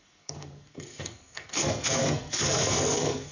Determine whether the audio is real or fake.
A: fake